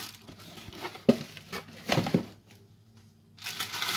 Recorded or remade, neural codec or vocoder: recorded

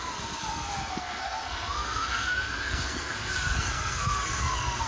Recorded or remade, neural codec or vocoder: remade, codec, SNAC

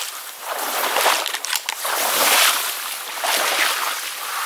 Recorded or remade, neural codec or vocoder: recorded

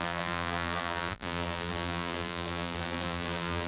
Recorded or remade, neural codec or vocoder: remade, vocoder, BigVGAN v2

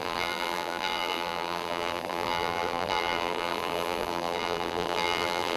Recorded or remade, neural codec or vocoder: remade, vocoder, BigVGAN v2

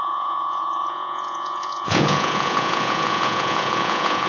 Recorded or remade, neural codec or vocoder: remade, vocoder, Vocos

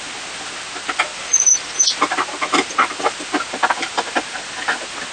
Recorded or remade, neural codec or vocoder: recorded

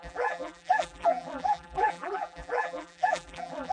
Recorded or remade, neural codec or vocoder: remade, vocoder, BigVGAN v2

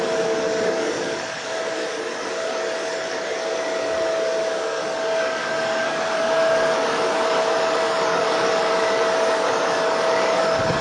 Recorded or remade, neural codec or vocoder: remade, codec, DAC